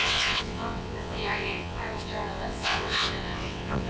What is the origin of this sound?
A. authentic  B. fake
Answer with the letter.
B